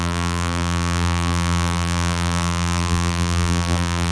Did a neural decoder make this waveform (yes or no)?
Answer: yes